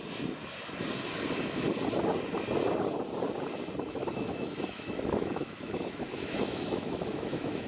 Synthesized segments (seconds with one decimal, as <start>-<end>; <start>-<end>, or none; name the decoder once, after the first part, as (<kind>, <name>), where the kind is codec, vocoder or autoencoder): 4.0-7.7 (autoencoder, DAC-VAE)